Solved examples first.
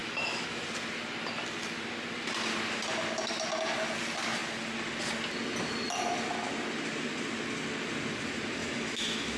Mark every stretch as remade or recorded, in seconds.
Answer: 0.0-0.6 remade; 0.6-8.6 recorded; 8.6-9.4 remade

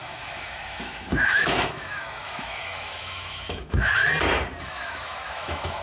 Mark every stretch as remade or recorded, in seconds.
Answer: 0.0-4.0 remade; 4.0-4.6 recorded; 4.6-5.8 remade

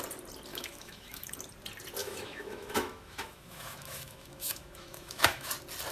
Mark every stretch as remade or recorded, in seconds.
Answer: 0.0-0.5 recorded; 0.5-1.3 remade; 1.3-2.0 recorded; 2.0-5.5 remade; 5.5-5.9 recorded

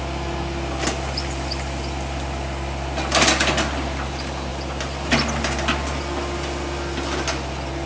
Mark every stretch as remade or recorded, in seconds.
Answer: 0.0-7.9 recorded

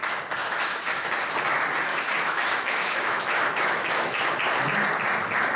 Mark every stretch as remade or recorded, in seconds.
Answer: 0.0-0.4 recorded; 0.4-1.1 remade; 1.1-1.9 recorded; 1.9-4.3 remade; 4.3-5.6 recorded